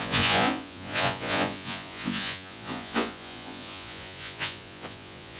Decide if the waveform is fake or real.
fake